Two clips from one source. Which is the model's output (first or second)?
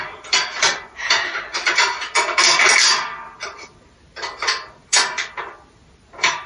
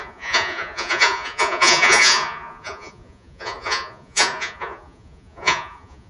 second